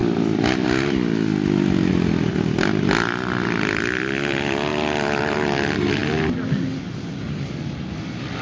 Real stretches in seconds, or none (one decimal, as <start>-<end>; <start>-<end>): 0.0-8.4